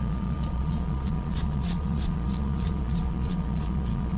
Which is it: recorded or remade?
remade